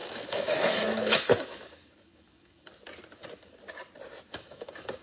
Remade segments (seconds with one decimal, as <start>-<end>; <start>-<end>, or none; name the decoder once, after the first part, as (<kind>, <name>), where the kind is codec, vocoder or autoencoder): 0.0-2.7 (autoencoder, DAC-VAE); 4.3-5.0